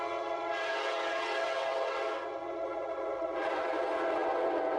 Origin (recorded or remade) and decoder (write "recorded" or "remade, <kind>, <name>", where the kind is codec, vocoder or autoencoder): remade, vocoder, WaveNeXt